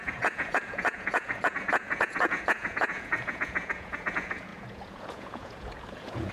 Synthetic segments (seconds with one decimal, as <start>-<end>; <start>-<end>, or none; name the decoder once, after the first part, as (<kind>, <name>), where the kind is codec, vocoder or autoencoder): 0.0-6.3 (vocoder, Vocos)